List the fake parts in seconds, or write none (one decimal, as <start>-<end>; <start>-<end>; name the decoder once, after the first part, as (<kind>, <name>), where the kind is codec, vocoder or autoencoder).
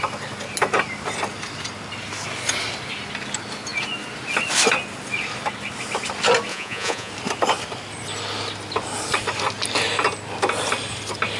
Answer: 6.5-7.1 (vocoder, Vocos)